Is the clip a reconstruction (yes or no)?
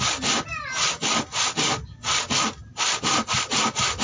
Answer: no